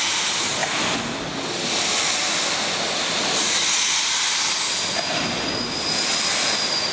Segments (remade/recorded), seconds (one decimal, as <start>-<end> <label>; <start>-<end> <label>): 0.0-6.9 recorded